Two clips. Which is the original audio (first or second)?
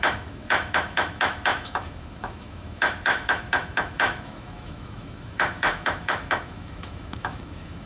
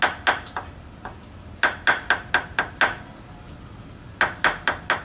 second